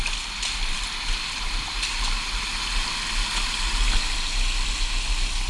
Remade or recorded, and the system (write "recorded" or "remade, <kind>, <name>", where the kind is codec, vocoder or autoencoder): recorded